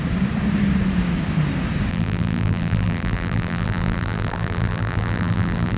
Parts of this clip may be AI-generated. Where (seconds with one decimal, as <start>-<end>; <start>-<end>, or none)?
1.9-5.8